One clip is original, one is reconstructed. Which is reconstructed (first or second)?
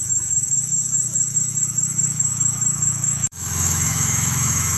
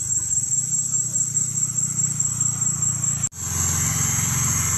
first